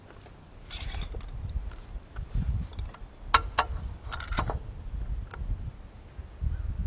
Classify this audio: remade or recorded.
recorded